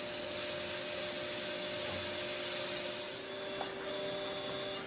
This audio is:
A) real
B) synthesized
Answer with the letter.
A